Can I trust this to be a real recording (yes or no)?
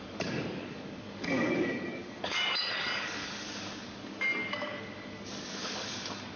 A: no